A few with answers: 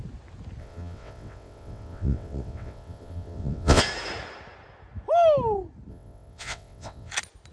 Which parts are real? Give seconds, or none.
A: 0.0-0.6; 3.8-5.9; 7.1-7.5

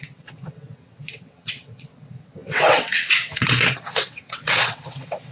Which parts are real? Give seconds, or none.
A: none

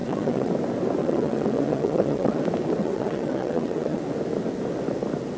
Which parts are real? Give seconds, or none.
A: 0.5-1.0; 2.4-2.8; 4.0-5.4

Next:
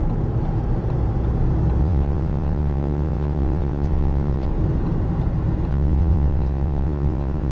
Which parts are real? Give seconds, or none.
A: 0.0-1.8; 4.5-5.7

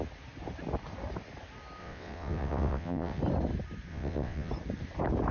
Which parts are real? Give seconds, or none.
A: 0.0-1.8; 3.2-3.9; 4.5-5.3

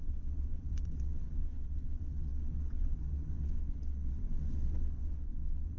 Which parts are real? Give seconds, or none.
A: none

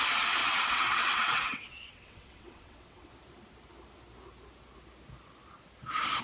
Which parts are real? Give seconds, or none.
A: 0.0-0.4; 3.1-6.2

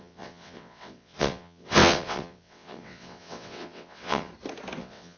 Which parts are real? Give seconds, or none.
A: 4.3-4.8